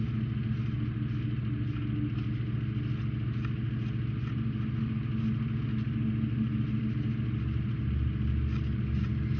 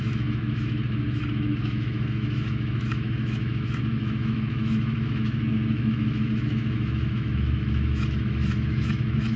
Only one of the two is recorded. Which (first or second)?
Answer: first